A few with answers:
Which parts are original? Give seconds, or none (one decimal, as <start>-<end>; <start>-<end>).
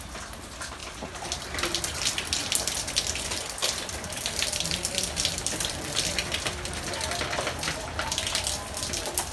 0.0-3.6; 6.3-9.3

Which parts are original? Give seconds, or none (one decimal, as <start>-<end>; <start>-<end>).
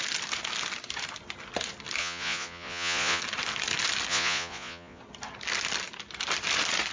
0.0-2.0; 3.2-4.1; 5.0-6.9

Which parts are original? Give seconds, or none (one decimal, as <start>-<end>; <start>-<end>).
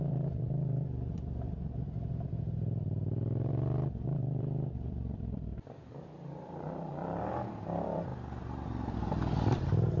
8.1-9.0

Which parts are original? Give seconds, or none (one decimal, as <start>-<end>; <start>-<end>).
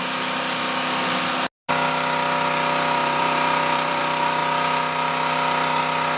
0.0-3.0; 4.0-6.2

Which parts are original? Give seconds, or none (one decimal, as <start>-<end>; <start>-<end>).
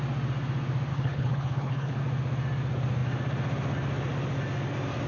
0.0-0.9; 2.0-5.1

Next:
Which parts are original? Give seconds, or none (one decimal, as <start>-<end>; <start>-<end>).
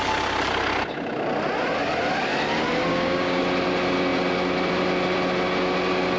0.0-2.9; 3.4-6.2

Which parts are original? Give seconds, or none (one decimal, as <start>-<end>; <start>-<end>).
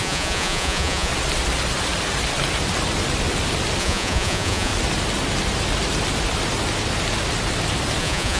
1.1-3.8; 4.7-8.0